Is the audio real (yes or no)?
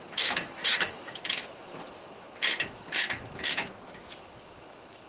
no